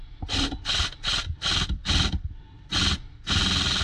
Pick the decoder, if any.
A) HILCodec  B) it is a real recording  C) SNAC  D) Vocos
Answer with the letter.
B